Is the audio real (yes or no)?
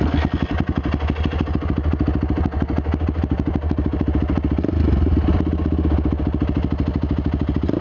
yes